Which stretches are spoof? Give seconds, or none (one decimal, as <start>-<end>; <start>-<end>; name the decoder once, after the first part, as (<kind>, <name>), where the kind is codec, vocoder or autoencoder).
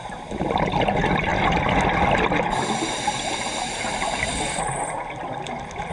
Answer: none